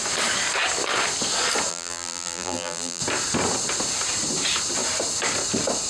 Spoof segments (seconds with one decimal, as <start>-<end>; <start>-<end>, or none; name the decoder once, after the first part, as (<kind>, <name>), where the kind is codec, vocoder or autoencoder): 1.7-3.0 (vocoder, BigVGAN v2)